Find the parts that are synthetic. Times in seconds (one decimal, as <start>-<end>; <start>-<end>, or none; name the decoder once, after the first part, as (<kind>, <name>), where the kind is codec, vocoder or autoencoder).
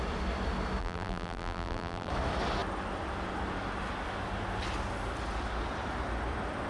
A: 0.8-2.1 (vocoder, BigVGAN v2)